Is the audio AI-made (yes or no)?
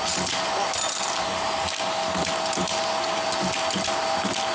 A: no